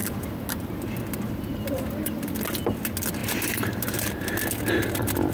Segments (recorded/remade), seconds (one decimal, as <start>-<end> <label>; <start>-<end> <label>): 0.0-0.7 remade; 0.7-1.5 recorded; 1.5-2.3 remade; 2.3-3.2 recorded; 3.2-4.1 remade; 4.1-5.3 recorded